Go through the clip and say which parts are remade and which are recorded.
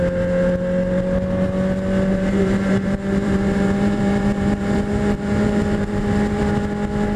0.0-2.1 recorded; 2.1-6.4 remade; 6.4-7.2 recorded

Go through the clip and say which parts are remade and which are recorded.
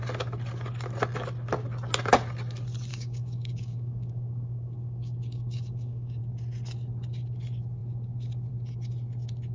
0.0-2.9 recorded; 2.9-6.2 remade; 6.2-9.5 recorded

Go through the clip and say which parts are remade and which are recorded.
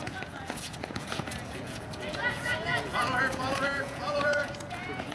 0.0-5.1 remade